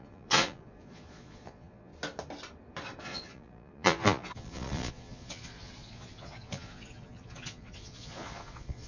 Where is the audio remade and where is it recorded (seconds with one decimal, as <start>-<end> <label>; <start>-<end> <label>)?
0.0-1.9 remade; 1.9-3.0 recorded; 3.0-8.9 remade